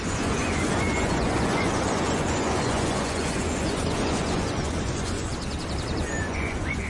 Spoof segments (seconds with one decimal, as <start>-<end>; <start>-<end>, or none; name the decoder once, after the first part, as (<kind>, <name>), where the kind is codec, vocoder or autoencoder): 0.0-5.3 (vocoder, Vocos); 6.0-6.9